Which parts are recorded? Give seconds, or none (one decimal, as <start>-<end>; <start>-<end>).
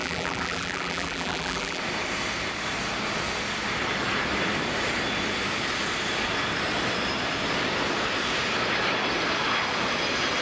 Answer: 1.8-10.4